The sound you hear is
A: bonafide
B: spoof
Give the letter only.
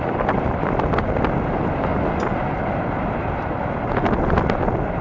A